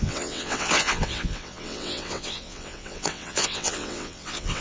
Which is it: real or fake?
fake